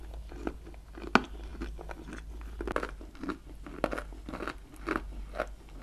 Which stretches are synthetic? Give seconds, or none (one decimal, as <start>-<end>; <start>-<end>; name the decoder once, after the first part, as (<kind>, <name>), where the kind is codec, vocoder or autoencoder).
none